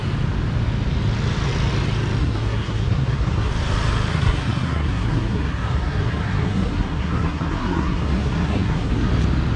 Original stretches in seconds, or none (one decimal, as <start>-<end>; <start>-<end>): 0.0-2.2; 3.5-4.1; 9.1-9.6